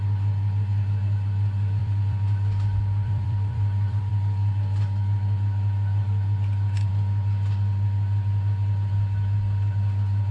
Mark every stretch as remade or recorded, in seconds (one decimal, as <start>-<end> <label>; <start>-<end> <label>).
0.0-1.8 recorded; 1.8-4.1 remade; 4.1-10.3 recorded